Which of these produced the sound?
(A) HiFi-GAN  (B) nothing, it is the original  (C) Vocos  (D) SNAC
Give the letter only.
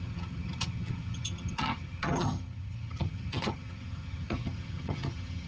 A